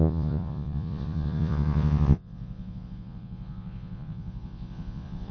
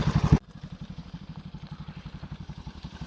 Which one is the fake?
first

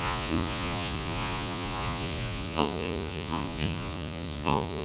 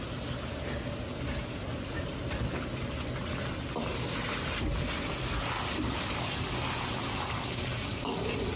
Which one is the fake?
first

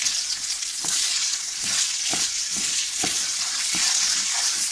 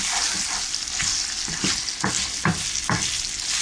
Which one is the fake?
first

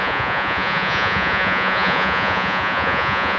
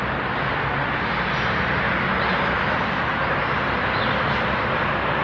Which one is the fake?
first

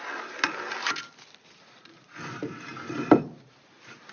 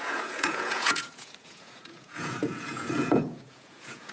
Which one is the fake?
second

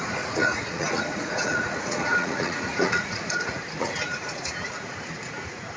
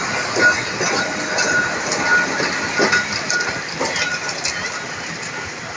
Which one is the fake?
first